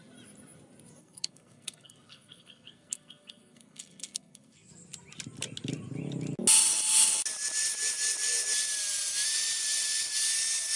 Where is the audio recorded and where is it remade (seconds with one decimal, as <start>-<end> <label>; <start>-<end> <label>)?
0.0-1.0 recorded; 1.0-4.7 remade; 4.7-10.8 recorded